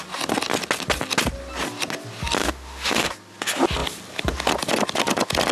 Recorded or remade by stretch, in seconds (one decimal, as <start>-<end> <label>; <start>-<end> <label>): 0.0-2.4 recorded; 2.4-3.1 remade; 3.1-5.5 recorded